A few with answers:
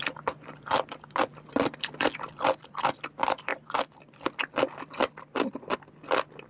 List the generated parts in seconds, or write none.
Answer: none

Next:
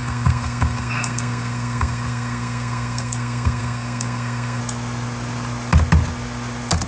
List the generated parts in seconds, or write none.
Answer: 0.0-4.6 (codec, SNAC)

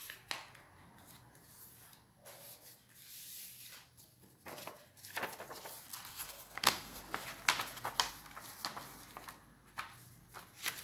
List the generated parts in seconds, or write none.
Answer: 6.1-7.0 (codec, SNAC)

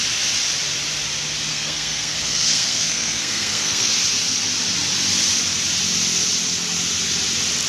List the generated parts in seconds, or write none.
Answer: 1.5-3.9 (codec, SNAC)

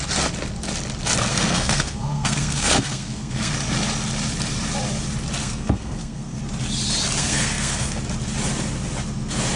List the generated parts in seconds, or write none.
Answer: 1.3-3.5 (codec, SNAC); 5.4-6.4; 7.2-8.0

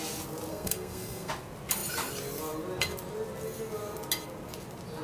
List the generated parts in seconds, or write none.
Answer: 0.5-1.3 (codec, SNAC)

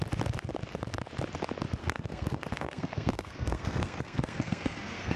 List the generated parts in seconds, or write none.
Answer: 1.8-5.2 (codec, SNAC)